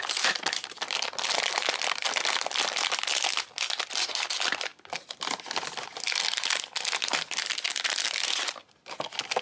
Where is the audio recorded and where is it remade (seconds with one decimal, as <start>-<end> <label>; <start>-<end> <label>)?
0.0-9.4 recorded